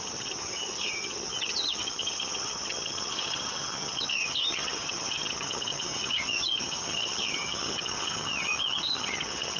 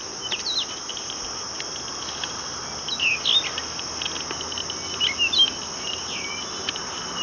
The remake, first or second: first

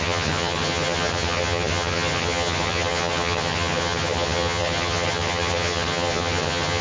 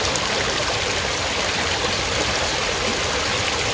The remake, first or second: first